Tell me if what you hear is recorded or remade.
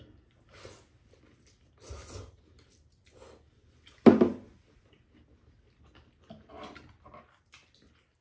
recorded